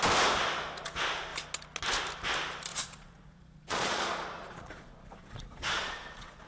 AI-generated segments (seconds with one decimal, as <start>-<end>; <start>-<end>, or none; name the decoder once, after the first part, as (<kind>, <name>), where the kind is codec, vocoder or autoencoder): 2.7-6.5 (vocoder, Vocos)